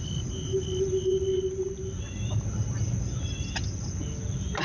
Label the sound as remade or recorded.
recorded